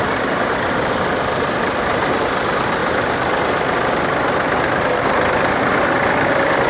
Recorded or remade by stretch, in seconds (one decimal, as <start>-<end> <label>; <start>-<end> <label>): 0.0-6.7 recorded